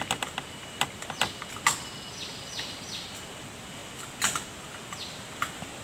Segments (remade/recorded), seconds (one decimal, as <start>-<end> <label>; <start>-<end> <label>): 0.0-5.8 recorded